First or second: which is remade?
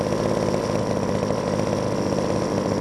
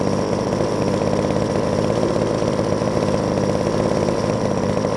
second